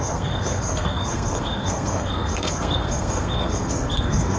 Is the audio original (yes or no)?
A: no